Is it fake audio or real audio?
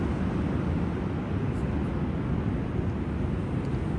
real